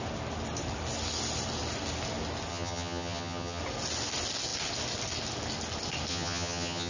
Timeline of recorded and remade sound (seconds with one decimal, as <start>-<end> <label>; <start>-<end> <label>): 0.0-2.5 recorded; 2.5-3.6 remade; 3.6-6.1 recorded; 6.1-6.9 remade